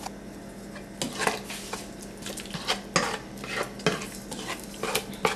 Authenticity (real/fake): real